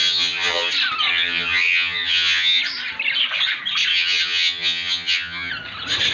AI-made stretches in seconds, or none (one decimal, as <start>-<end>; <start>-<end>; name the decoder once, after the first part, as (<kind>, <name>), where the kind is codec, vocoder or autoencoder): 0.0-0.7 (vocoder, HiFi-GAN); 1.1-2.6; 3.9-5.5